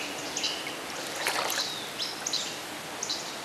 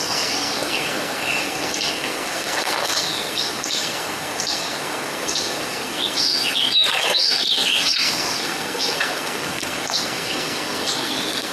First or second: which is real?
first